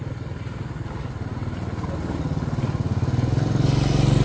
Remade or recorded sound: recorded